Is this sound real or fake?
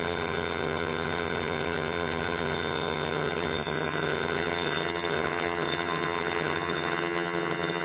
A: fake